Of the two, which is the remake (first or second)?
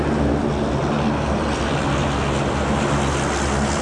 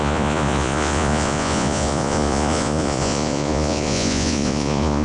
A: second